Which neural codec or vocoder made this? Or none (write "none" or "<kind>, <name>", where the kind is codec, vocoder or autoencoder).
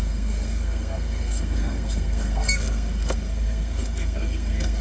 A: codec, SNAC